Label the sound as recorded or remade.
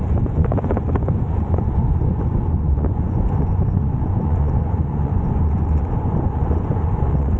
remade